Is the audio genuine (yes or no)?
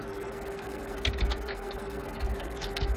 no